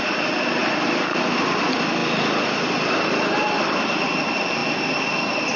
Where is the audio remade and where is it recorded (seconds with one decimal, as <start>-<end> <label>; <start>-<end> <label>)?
0.0-0.6 recorded; 0.6-1.2 remade; 1.2-2.0 recorded; 2.0-4.1 remade; 4.1-5.6 recorded